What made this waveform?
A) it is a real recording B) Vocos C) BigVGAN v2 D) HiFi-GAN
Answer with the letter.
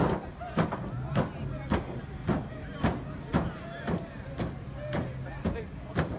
A